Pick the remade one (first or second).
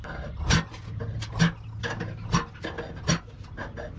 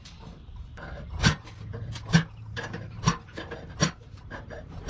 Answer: second